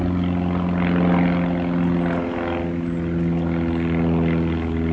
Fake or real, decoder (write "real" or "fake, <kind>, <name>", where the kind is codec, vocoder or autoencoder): real